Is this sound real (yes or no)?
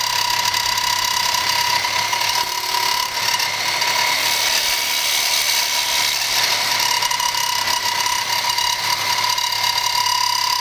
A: yes